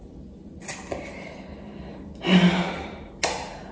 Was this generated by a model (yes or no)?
no